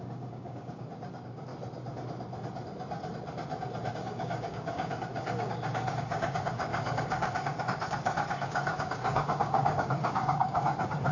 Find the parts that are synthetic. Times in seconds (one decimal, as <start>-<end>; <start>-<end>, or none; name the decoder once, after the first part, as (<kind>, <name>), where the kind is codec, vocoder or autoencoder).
0.0-1.5 (codec, DAC); 3.9-11.1